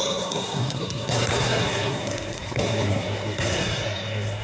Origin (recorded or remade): remade